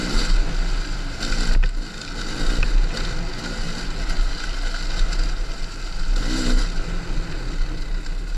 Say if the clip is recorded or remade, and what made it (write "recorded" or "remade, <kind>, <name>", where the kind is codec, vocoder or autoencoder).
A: recorded